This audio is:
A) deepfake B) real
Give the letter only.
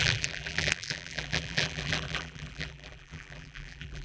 A